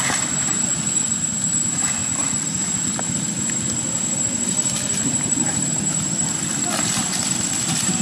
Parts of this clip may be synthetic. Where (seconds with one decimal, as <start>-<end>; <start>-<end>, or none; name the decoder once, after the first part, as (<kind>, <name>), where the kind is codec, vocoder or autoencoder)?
0.0-2.0 (vocoder, BigVGAN v2); 3.1-8.0